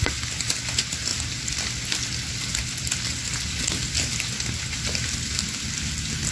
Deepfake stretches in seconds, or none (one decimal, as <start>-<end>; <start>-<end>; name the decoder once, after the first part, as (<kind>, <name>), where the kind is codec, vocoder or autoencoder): none